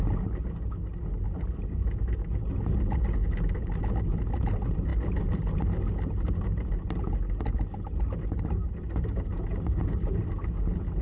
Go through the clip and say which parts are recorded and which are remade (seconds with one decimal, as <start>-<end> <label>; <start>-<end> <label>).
0.0-11.0 recorded